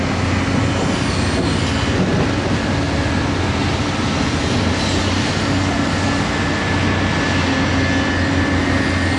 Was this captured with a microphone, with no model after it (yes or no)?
yes